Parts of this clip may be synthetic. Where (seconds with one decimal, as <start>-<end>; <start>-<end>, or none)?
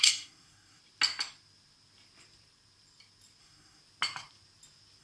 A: 0.0-0.8; 3.4-3.8